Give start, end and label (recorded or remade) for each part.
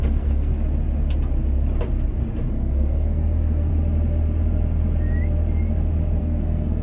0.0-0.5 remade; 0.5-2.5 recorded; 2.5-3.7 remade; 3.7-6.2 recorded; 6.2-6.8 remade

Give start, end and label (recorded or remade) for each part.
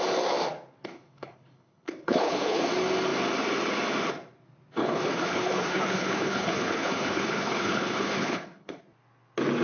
0.0-0.8 recorded; 0.8-2.7 remade; 2.7-4.8 recorded; 4.8-8.8 remade; 8.8-9.6 recorded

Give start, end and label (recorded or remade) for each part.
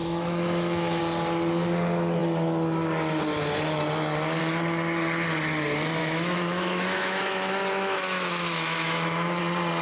0.0-1.0 remade; 1.0-6.0 recorded; 6.0-9.4 remade; 9.4-9.8 recorded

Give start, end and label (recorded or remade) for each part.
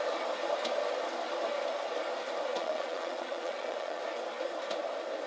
0.0-2.5 recorded; 2.5-4.0 remade; 4.0-5.3 recorded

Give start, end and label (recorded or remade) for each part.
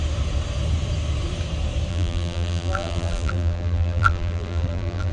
0.0-1.9 recorded; 1.9-5.1 remade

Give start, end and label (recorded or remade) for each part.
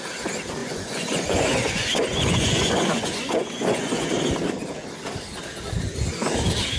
0.0-0.6 recorded; 0.6-4.1 remade; 4.1-6.8 recorded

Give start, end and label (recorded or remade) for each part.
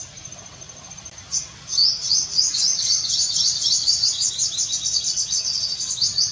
0.0-1.0 remade; 1.0-1.8 recorded; 1.8-4.3 remade; 4.3-6.3 recorded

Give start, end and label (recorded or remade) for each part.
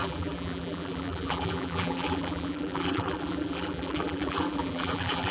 0.0-5.3 remade